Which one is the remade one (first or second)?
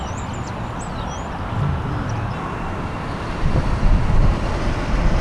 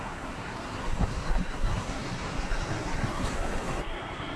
second